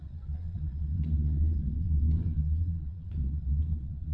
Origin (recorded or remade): remade